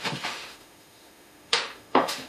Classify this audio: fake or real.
fake